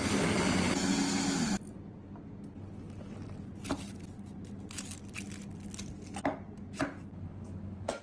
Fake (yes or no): no